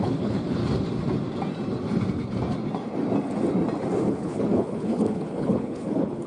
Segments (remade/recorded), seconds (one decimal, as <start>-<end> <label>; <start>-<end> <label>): 0.0-0.6 remade; 0.6-4.1 recorded; 4.1-6.3 remade